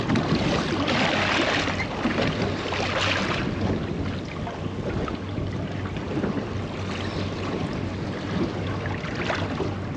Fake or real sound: real